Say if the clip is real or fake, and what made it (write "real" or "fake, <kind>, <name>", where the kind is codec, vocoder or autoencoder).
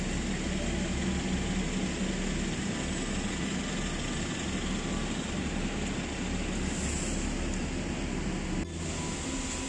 real